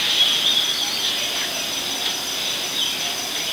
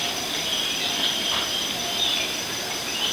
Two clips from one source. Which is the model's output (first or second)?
second